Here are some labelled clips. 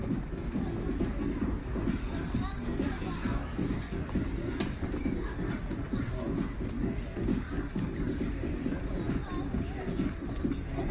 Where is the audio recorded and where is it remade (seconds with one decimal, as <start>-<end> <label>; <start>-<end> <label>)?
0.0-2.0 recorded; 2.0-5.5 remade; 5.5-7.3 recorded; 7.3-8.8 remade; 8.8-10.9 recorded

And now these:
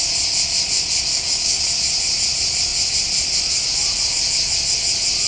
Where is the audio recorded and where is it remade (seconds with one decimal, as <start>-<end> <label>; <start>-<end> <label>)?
0.0-1.1 recorded; 1.1-1.6 remade; 1.6-5.3 recorded

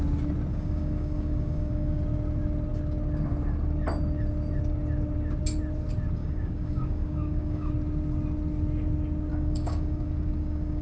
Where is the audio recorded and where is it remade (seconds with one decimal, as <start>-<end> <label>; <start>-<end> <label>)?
0.0-0.5 recorded; 0.5-2.0 remade; 2.0-6.2 recorded; 6.2-7.7 remade; 7.7-9.3 recorded; 9.3-10.8 remade